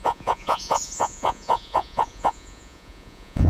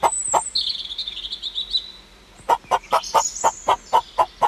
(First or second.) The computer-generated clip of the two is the first